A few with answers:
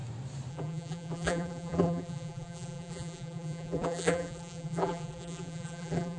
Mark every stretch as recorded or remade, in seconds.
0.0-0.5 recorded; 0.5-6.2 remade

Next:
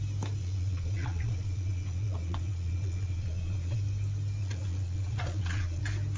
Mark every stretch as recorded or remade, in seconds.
0.0-0.4 recorded; 0.4-3.8 remade; 3.8-4.4 recorded; 4.4-5.8 remade; 5.8-6.2 recorded

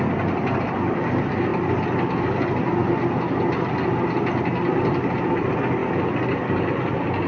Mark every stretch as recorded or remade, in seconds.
0.0-7.3 recorded